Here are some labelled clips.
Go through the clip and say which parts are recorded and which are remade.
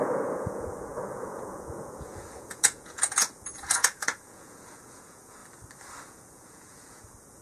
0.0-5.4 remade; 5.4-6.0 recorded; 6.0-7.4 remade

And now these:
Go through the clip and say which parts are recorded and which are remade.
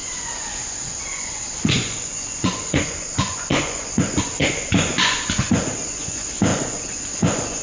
0.0-7.6 remade